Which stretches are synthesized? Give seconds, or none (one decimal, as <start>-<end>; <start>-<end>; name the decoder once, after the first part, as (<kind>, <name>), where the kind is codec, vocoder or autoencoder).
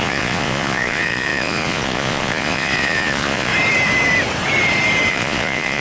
0.0-3.5 (vocoder, Vocos); 5.1-5.8